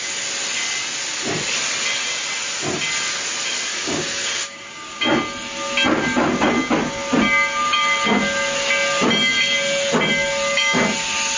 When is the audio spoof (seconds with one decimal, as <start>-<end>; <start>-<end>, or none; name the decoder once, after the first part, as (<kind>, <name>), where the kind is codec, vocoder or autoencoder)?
3.7-5.0 (codec, DAC)